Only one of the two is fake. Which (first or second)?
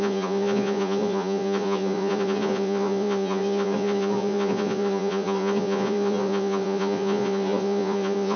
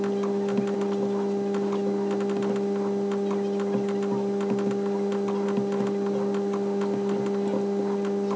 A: first